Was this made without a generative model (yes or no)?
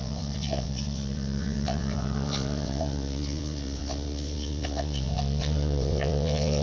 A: no